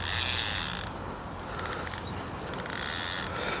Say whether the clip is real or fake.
real